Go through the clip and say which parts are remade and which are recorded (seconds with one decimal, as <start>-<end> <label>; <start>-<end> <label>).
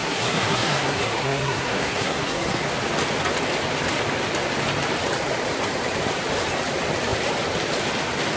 0.0-2.7 remade; 2.7-8.4 recorded